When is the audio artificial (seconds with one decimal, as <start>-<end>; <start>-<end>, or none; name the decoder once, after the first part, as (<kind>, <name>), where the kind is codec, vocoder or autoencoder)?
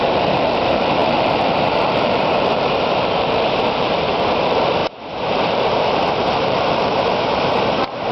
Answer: 0.0-8.1 (vocoder, BigVGAN v2)